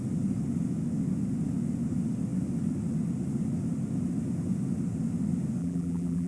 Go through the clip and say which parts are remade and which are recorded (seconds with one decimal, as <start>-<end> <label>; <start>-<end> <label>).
0.0-5.6 recorded; 5.6-6.3 remade